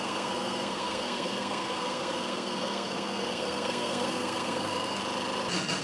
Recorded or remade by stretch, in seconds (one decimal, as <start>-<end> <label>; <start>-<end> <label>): 0.0-5.0 remade; 5.0-5.8 recorded